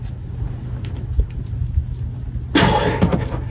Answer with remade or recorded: recorded